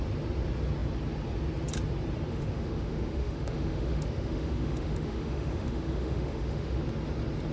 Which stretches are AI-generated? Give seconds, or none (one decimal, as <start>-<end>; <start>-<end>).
2.3-6.8